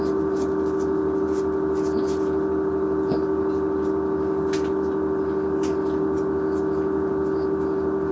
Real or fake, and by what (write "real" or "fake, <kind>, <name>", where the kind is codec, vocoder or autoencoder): real